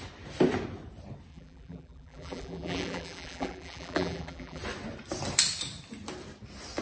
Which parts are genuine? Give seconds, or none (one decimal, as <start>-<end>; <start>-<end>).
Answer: 0.0-1.3; 4.6-6.8